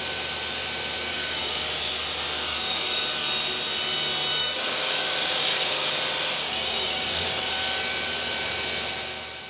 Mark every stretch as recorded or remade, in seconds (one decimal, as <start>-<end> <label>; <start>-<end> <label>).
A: 0.0-1.1 recorded; 1.1-1.9 remade; 1.9-2.5 recorded; 2.5-3.0 remade; 3.0-4.4 recorded; 4.4-5.9 remade; 5.9-6.4 recorded; 6.4-7.5 remade; 7.5-9.5 recorded